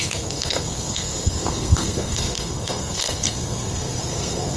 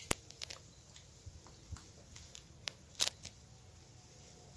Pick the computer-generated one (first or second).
first